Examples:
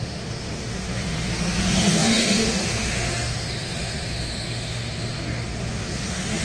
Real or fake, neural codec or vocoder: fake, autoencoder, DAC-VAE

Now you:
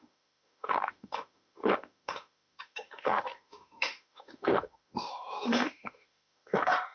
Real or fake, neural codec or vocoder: fake, autoencoder, DAC-VAE